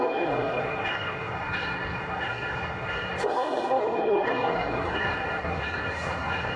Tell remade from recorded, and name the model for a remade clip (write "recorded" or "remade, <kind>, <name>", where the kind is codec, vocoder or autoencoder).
remade, codec, SNAC